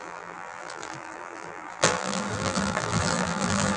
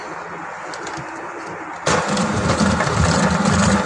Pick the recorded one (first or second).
second